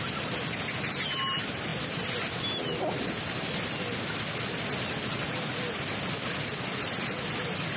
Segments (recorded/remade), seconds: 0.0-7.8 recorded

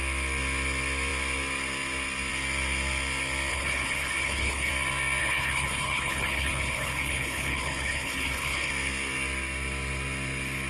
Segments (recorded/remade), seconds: 0.0-3.5 recorded; 3.5-4.7 remade; 4.7-5.2 recorded; 5.2-8.7 remade; 8.7-10.7 recorded

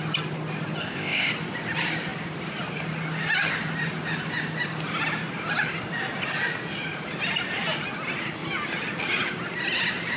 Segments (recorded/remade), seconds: 0.0-0.8 recorded; 0.8-1.3 remade; 1.3-10.2 recorded